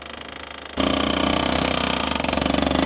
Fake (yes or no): no